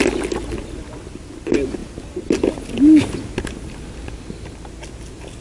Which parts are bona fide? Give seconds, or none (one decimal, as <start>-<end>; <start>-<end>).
0.0-5.4